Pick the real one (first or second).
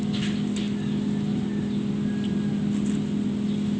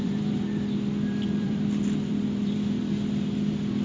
first